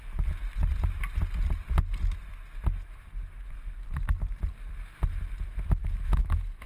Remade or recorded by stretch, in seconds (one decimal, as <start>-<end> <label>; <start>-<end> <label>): 0.0-5.8 recorded; 5.8-6.7 remade